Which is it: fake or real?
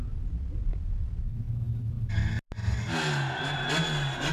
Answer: real